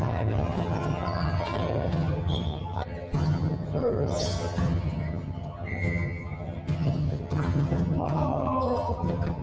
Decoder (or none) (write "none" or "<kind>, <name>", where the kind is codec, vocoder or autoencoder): vocoder, HiFi-GAN